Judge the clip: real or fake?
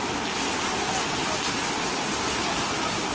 real